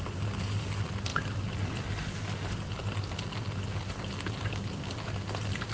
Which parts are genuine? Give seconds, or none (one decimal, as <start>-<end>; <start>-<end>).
0.0-5.7